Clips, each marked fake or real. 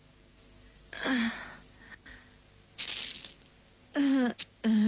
real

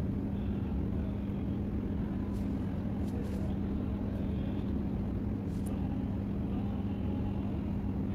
real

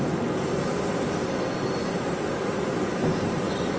real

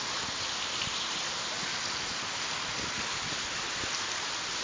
real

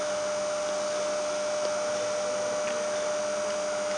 real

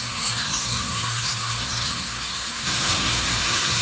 fake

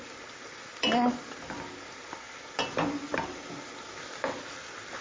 real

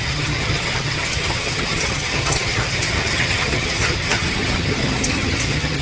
fake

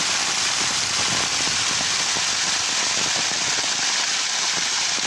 real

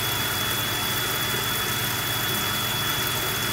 real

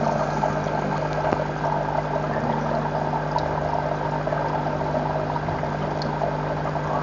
real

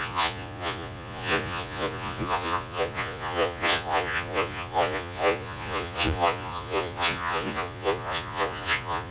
fake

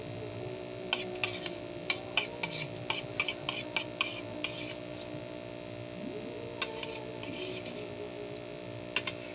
real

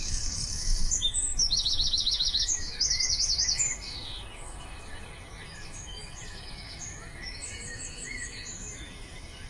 fake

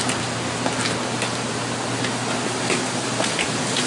real